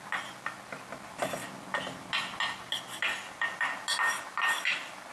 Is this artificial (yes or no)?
no